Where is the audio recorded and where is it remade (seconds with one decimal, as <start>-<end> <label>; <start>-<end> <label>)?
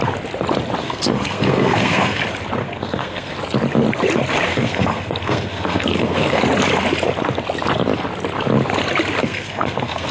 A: 0.0-0.8 recorded; 0.8-2.2 remade; 2.2-2.6 recorded; 2.6-3.3 remade; 3.3-4.5 recorded; 4.5-6.4 remade; 6.4-9.2 recorded; 9.2-10.1 remade